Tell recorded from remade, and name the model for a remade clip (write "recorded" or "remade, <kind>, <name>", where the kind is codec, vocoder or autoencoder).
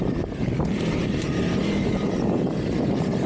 remade, vocoder, BigVGAN v2